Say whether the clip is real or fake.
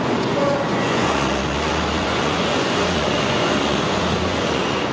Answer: fake